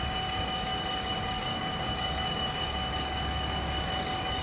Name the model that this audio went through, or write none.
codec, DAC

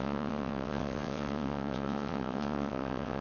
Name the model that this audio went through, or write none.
vocoder, WaveNeXt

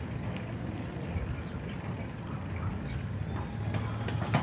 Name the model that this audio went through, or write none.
none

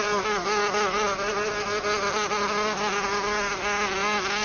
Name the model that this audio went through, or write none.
none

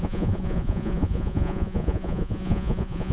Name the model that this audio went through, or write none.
vocoder, Vocos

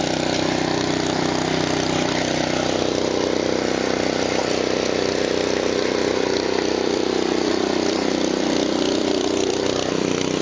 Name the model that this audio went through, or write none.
vocoder, BigVGAN v2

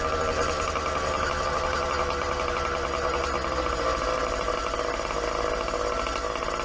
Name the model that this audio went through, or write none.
none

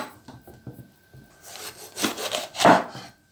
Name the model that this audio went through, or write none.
none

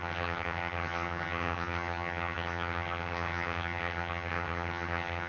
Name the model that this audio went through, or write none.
vocoder, HiFi-GAN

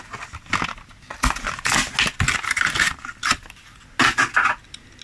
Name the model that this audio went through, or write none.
none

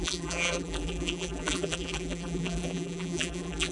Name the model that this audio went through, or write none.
vocoder, BigVGAN v2